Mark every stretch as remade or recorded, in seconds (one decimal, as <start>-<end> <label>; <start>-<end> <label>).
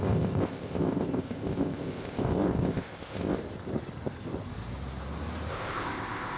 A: 0.0-3.4 remade; 3.4-5.5 recorded; 5.5-6.4 remade